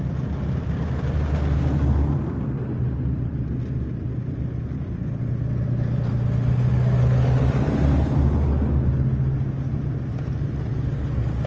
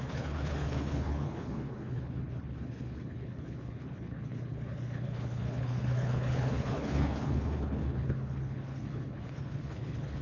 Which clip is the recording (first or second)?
first